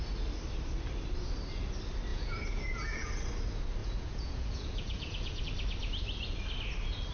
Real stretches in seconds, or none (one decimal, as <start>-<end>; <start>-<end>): 0.0-2.1; 3.1-3.8; 5.4-7.1